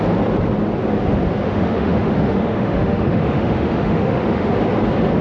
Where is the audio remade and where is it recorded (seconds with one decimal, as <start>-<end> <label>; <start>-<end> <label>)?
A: 0.0-1.4 recorded; 1.4-4.5 remade; 4.5-5.2 recorded